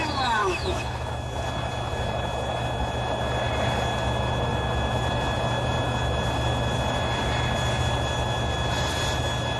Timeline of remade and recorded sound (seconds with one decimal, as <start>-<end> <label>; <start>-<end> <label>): 0.0-0.4 recorded; 0.4-1.1 remade; 1.1-9.6 recorded